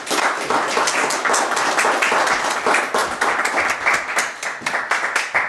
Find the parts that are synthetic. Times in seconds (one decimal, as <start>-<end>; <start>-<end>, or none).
none